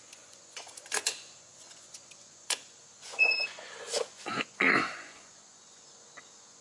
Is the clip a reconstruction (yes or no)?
yes